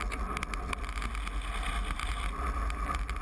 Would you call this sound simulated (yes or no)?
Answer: no